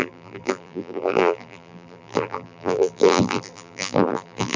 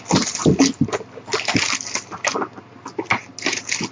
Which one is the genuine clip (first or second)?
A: second